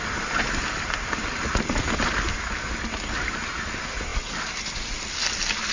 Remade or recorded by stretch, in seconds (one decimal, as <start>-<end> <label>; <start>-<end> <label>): 0.0-5.7 recorded